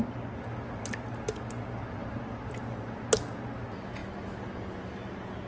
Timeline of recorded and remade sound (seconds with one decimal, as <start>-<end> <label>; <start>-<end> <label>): 0.0-5.5 recorded